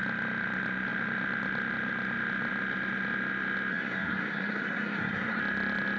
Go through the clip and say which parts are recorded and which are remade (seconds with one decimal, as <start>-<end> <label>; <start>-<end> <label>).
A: 0.0-3.7 recorded; 3.7-5.4 remade; 5.4-6.0 recorded